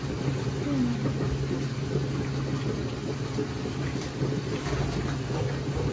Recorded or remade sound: recorded